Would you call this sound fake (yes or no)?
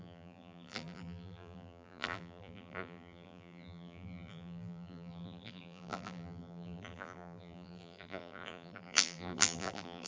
yes